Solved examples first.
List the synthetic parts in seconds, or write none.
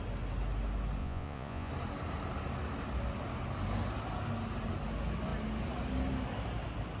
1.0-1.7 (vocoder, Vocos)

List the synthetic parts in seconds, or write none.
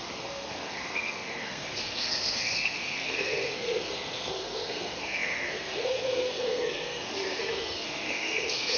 0.0-8.8 (codec, SNAC)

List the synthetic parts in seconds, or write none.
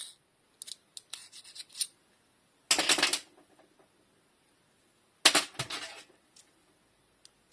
none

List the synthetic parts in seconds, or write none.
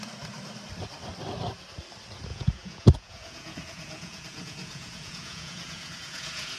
2.3-6.6 (vocoder, Vocos)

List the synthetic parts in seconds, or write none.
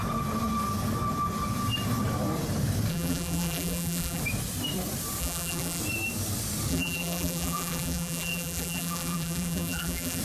2.9-4.2 (vocoder, BigVGAN v2); 5.2-5.8; 6.7-10.2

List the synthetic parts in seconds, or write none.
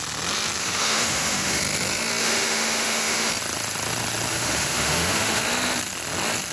0.6-1.6 (autoencoder, DAC-VAE); 2.2-3.3; 4.3-5.4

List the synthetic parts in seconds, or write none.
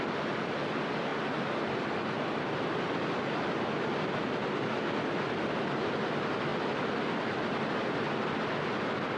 none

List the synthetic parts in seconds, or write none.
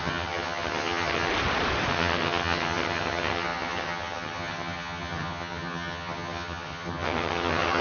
0.0-1.3 (vocoder, HiFi-GAN); 1.9-7.8